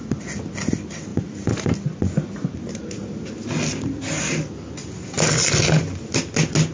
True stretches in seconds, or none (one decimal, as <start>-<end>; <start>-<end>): 0.0-6.7